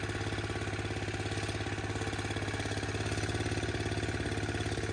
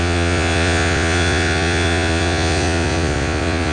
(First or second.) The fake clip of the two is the second